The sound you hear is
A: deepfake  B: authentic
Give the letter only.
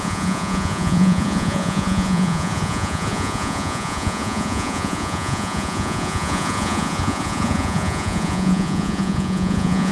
A